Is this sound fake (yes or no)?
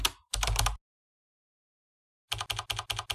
no